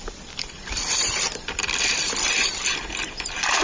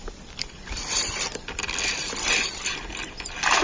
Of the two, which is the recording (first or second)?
second